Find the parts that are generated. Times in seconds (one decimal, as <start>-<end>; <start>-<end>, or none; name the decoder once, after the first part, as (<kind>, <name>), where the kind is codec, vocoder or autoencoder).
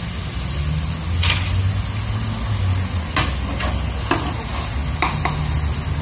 none